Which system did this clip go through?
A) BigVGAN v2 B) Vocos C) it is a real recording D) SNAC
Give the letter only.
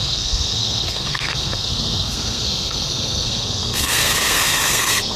D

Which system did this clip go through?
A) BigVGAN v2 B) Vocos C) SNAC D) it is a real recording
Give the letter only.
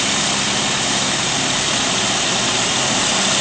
D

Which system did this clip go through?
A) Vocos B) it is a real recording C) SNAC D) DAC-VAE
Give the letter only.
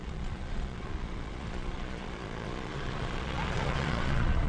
A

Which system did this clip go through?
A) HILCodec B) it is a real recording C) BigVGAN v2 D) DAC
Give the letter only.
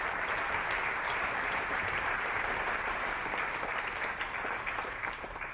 C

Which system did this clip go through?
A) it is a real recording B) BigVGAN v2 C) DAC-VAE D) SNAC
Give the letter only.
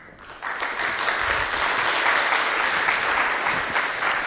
A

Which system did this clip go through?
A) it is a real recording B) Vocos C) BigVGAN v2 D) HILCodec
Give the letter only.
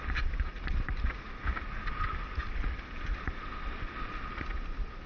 A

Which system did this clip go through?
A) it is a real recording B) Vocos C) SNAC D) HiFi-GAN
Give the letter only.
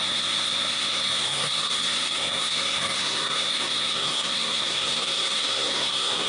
C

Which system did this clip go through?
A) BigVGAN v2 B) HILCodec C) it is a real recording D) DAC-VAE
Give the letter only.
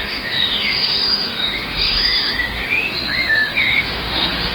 D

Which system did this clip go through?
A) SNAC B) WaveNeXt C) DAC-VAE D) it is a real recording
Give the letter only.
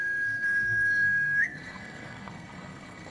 A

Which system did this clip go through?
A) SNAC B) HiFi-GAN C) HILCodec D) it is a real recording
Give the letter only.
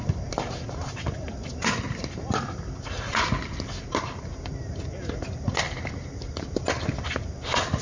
D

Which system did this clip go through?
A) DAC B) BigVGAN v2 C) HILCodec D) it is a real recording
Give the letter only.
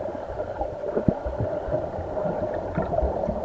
B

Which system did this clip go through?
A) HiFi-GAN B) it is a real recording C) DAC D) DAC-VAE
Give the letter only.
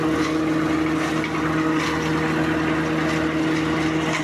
B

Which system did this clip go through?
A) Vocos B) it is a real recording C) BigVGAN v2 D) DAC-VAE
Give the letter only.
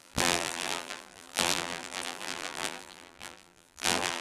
C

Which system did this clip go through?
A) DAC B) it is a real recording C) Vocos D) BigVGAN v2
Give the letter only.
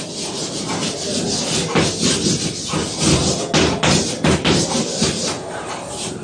B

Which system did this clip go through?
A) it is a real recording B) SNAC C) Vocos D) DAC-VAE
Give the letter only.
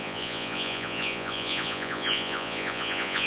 C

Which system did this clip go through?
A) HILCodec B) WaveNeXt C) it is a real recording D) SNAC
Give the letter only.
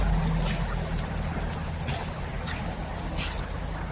C